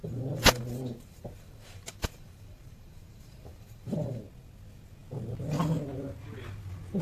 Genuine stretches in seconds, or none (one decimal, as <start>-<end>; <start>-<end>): 4.2-7.0

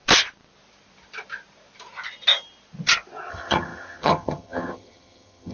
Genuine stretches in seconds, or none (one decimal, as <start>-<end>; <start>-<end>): 0.0-3.3

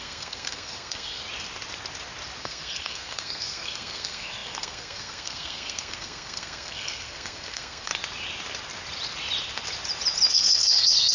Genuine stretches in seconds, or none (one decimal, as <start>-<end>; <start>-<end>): 1.2-2.4; 7.9-10.3